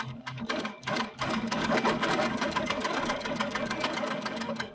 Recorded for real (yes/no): no